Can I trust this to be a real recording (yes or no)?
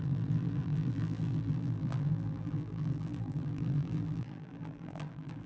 no